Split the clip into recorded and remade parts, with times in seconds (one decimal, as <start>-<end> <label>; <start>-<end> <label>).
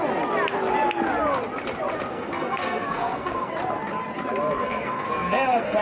0.0-2.1 recorded; 2.1-3.5 remade; 3.5-4.6 recorded; 4.6-5.8 remade